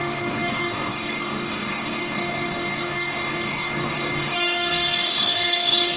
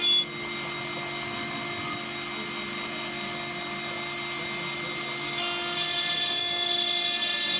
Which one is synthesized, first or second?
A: first